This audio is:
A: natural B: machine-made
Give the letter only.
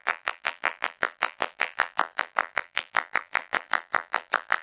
B